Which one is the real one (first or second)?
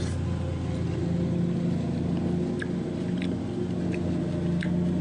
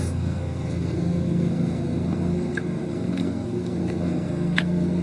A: first